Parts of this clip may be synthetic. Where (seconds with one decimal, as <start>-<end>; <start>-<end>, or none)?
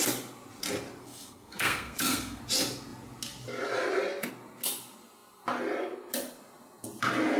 1.0-2.4